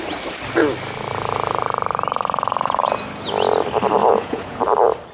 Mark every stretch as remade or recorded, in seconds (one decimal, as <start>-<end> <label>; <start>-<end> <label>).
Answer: 0.0-4.0 recorded; 4.0-4.6 remade; 4.6-5.1 recorded